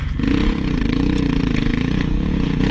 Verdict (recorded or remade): remade